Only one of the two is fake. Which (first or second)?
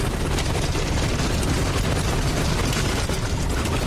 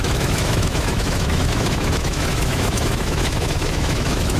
second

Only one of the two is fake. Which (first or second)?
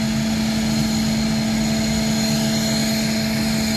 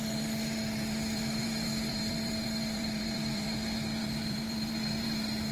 second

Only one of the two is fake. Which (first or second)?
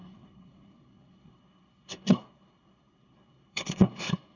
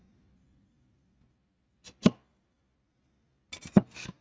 first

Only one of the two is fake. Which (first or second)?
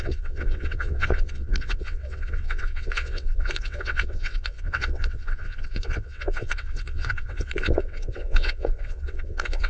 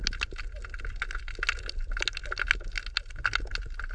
first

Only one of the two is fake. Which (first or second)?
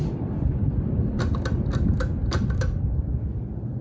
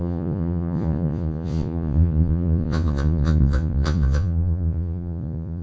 second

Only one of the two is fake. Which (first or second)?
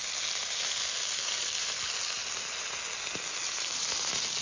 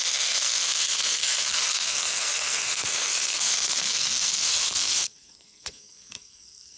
second